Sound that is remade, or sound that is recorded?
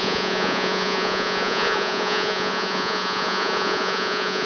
remade